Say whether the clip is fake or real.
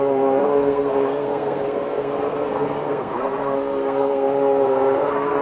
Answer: fake